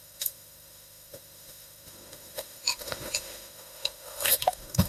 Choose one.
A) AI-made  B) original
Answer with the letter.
A